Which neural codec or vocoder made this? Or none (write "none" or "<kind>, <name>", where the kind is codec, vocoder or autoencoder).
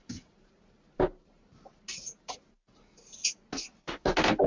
none